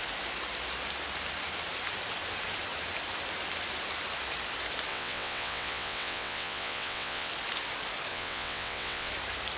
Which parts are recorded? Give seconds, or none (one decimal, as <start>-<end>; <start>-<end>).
0.0-4.9; 7.3-8.1; 9.1-9.6